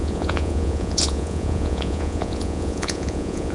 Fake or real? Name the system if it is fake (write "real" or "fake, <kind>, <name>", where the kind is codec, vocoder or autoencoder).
fake, vocoder, Vocos